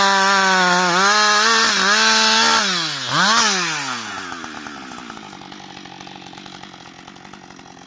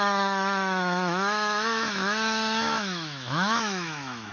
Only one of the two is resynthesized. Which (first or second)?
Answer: second